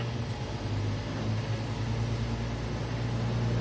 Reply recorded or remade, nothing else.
recorded